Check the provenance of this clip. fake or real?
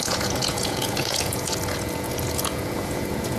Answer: fake